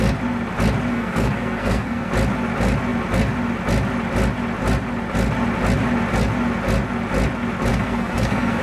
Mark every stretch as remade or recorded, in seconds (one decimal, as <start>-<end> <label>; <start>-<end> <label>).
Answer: 0.0-0.9 recorded; 0.9-2.1 remade; 2.1-7.7 recorded; 7.7-8.6 remade